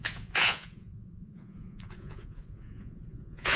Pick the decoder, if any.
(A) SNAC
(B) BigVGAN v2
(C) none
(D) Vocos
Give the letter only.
D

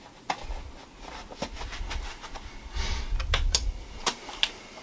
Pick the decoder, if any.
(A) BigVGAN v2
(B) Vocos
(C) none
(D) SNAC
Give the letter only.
C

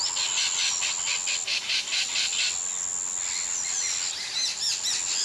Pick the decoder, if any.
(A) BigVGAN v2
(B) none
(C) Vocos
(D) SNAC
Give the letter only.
B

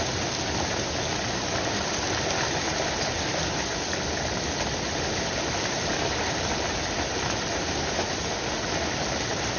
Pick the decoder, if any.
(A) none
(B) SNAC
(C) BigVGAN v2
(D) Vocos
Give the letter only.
A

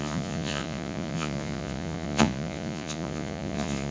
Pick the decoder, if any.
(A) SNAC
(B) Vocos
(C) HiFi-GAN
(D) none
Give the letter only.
B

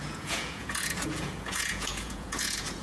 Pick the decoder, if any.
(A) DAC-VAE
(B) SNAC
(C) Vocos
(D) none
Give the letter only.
C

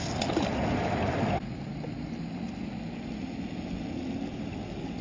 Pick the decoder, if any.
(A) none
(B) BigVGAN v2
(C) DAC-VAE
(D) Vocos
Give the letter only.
A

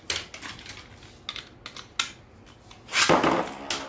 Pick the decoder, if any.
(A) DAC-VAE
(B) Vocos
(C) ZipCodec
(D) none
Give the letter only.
D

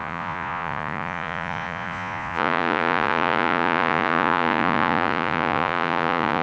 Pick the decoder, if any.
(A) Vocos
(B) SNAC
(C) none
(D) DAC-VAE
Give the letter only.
A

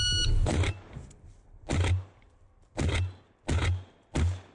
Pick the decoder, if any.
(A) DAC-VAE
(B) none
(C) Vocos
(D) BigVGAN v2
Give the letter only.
B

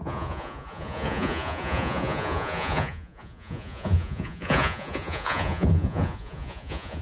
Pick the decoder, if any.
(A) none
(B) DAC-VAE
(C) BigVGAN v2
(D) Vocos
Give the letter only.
D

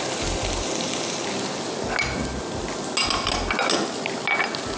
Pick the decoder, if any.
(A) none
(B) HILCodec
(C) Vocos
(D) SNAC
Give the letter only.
A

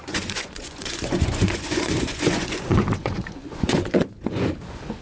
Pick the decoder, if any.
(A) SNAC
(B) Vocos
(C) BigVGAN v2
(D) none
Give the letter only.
B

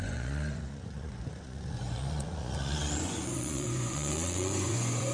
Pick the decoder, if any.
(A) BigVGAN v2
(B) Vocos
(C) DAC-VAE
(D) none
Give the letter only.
B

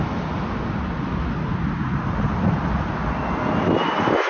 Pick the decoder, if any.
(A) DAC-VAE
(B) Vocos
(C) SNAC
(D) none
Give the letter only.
D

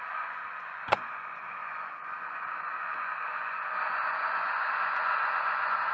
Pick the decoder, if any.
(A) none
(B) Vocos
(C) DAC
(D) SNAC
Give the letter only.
B